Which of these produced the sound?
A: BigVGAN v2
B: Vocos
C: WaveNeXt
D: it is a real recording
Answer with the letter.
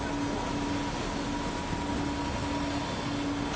D